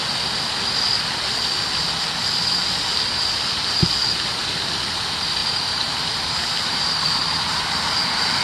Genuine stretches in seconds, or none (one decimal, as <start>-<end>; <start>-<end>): 0.0-5.4; 7.7-8.4